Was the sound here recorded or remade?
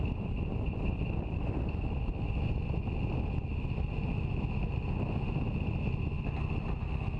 recorded